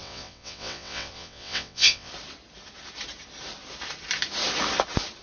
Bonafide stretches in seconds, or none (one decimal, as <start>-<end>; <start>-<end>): 2.1-5.2